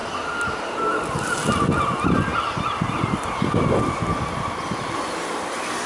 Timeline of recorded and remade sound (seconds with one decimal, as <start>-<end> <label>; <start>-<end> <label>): 0.0-5.9 recorded